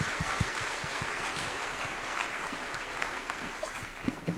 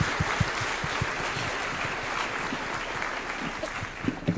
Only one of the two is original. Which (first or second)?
second